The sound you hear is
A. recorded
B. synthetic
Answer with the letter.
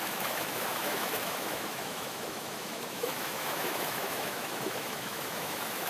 B